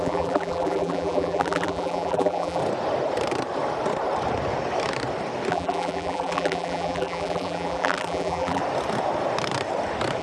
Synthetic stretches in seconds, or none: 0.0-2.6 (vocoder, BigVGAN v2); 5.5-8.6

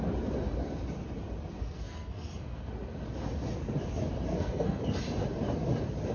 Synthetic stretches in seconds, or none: 1.6-2.7 (codec, SNAC); 4.3-4.8

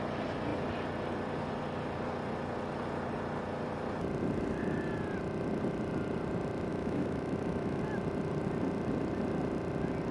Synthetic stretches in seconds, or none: 6.7-7.8 (autoencoder, DAC-VAE)

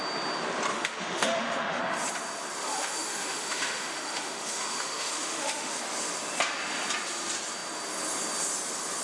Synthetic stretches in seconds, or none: 0.7-1.8 (autoencoder, DAC-VAE); 2.6-5.8